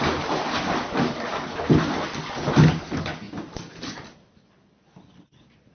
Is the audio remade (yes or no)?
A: no